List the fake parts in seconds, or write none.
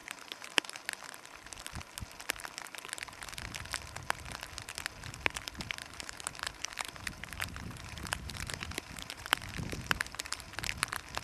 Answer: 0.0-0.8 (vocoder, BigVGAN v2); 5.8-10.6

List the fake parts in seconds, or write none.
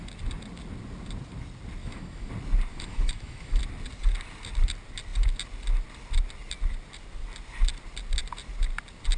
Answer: 1.8-2.3 (autoencoder, DAC-VAE); 2.7-3.6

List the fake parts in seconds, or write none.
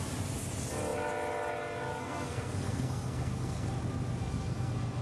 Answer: 1.9-3.7 (codec, SNAC); 4.2-5.0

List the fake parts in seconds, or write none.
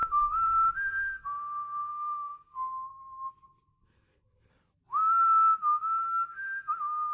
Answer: 0.0-1.2 (codec, SNAC); 1.9-4.5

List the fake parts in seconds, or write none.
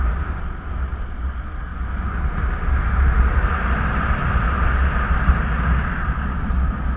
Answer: none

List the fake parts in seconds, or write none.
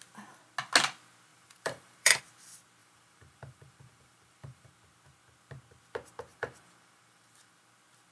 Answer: 1.3-2.2 (vocoder, BigVGAN v2); 2.8-4.7; 6.3-7.5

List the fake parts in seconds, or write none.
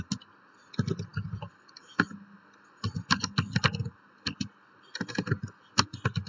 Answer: none